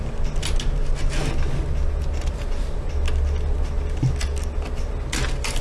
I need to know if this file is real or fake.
real